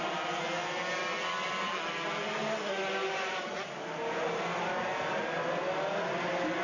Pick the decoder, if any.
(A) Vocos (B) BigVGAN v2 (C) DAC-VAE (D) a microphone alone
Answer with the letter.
D